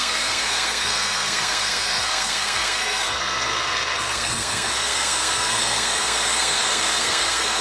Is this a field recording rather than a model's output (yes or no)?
no